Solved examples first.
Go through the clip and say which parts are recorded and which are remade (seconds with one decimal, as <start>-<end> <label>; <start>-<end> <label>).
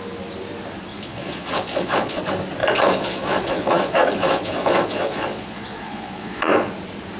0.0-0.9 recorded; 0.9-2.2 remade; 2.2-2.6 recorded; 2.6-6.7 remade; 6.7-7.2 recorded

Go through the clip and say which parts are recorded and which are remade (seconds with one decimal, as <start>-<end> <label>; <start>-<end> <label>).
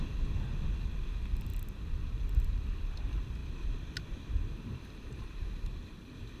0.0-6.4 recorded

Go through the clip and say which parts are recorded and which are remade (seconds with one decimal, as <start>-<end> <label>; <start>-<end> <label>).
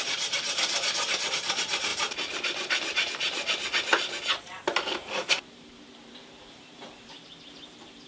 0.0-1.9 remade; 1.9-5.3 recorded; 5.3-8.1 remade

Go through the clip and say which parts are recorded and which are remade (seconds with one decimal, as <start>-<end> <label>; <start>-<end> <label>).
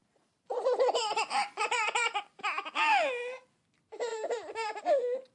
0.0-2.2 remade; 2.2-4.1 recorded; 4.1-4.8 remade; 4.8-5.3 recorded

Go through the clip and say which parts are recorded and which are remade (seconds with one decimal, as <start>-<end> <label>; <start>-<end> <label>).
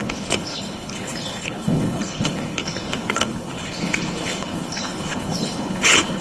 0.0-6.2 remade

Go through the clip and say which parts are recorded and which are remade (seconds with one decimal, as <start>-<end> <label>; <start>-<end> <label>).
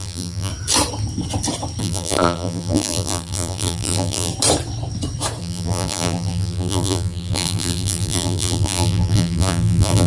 0.0-0.5 remade; 0.5-1.8 recorded; 1.8-4.3 remade; 4.3-5.4 recorded; 5.4-10.1 remade